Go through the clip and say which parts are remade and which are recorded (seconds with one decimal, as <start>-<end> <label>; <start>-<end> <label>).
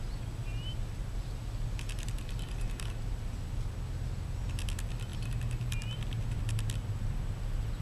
0.0-7.8 recorded